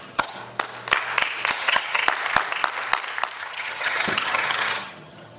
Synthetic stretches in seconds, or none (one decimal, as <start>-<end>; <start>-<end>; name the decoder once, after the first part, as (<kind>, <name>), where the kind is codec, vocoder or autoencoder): 0.0-0.4 (vocoder, HiFi-GAN); 1.5-2.0; 3.4-5.4